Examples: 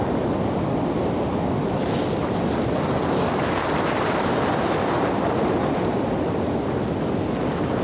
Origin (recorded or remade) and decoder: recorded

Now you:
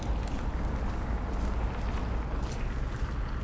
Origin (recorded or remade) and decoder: recorded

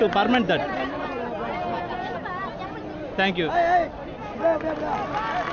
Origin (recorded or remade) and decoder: recorded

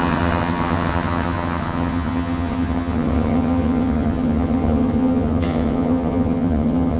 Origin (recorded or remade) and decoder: remade, vocoder, HiFi-GAN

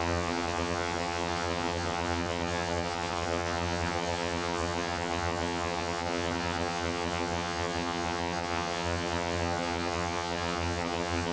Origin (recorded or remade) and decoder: remade, vocoder, HiFi-GAN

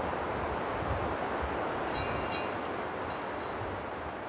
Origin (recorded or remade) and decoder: recorded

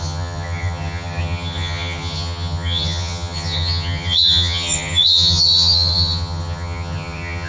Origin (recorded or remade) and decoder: remade, vocoder, HiFi-GAN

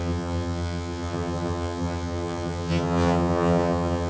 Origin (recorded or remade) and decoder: remade, vocoder, HiFi-GAN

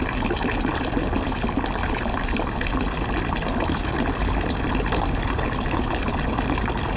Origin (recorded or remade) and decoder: recorded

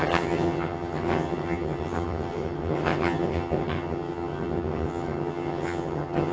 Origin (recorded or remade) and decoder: remade, vocoder, HiFi-GAN